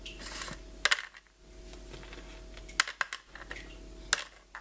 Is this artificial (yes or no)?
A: no